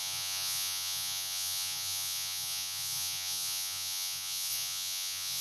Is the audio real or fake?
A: fake